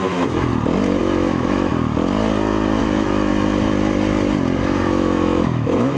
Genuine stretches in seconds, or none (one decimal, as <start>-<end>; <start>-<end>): 0.5-1.0; 1.7-2.8; 3.3-4.9